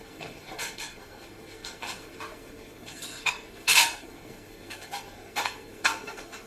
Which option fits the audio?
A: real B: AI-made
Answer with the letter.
B